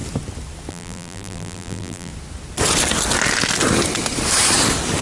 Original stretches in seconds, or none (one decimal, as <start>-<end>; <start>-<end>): 0.0-0.7; 2.1-5.0